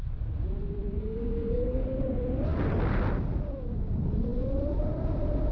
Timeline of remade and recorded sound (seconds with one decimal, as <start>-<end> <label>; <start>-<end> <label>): 0.0-1.0 recorded; 1.0-2.0 remade; 2.0-5.5 recorded